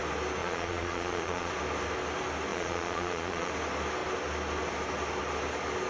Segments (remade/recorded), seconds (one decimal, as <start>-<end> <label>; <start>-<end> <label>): 0.0-0.4 recorded; 0.4-1.5 remade; 1.5-2.5 recorded; 2.5-3.5 remade; 3.5-5.9 recorded